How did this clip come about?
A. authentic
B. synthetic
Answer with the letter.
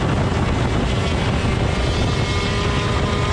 A